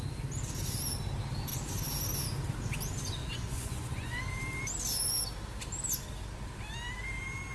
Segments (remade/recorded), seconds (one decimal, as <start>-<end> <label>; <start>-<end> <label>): 0.0-3.2 recorded; 3.2-4.2 remade; 4.2-7.5 recorded